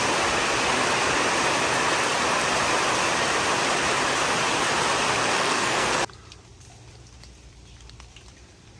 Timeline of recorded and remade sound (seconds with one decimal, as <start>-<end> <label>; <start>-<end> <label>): 0.0-5.2 recorded; 5.2-6.0 remade; 6.0-8.8 recorded